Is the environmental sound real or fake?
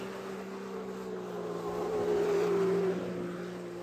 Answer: real